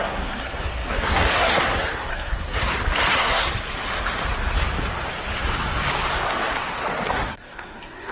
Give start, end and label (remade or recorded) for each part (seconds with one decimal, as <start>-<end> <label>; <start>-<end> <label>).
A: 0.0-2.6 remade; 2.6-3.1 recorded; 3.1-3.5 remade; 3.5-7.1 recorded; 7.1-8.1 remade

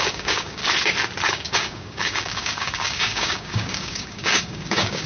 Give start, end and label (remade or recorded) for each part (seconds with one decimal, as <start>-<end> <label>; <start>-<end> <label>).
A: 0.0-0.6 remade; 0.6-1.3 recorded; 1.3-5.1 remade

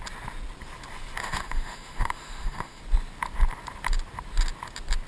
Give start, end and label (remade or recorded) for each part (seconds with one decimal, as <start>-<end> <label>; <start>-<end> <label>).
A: 0.0-1.2 recorded; 1.2-2.8 remade; 2.8-5.1 recorded